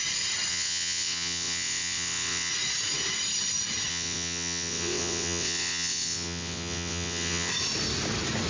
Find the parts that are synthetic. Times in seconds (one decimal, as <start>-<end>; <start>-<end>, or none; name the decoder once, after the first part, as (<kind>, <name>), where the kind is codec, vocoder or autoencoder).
0.5-2.5 (vocoder, WaveNeXt); 3.9-7.5